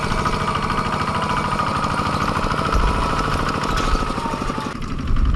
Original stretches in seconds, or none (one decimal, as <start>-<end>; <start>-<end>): 0.0-5.4